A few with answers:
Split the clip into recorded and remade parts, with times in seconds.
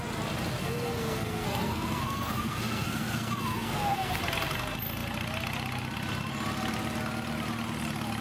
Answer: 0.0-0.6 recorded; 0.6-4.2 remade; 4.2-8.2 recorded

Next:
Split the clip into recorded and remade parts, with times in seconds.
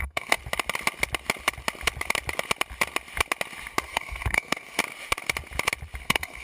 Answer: 0.0-0.4 remade; 0.4-3.8 recorded; 3.8-4.8 remade; 4.8-6.0 recorded; 6.0-6.4 remade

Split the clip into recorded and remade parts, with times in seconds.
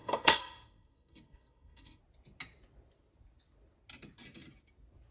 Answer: 0.0-2.0 remade; 2.0-5.1 recorded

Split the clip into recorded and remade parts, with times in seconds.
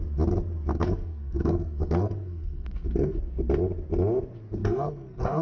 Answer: 0.0-0.7 recorded; 0.7-3.2 remade; 3.2-4.6 recorded; 4.6-5.4 remade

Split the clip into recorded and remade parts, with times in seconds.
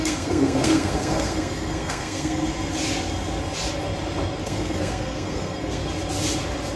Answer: 0.0-2.4 remade; 2.4-4.4 recorded; 4.4-5.8 remade; 5.8-6.8 recorded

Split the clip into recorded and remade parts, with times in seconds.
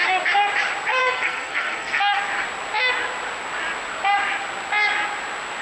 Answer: 0.0-1.0 recorded; 1.0-2.2 remade; 2.2-5.6 recorded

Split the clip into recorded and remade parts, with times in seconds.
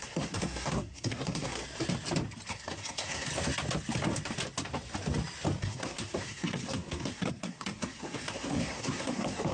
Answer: 0.0-1.6 remade; 1.6-2.5 recorded; 2.5-3.3 remade; 3.3-5.6 recorded; 5.6-9.5 remade